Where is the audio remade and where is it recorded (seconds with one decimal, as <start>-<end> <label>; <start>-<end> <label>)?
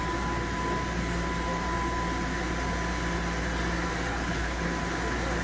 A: 0.0-4.1 recorded; 4.1-4.6 remade; 4.6-5.4 recorded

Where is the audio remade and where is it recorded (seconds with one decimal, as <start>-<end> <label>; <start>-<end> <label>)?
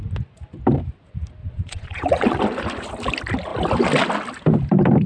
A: 0.0-1.4 recorded; 1.4-2.4 remade; 2.4-5.1 recorded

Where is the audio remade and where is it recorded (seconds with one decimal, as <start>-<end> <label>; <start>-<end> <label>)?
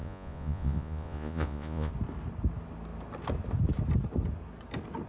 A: 0.0-1.9 remade; 1.9-5.1 recorded